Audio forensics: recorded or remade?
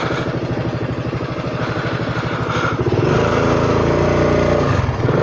recorded